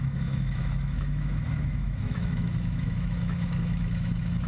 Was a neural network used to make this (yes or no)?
yes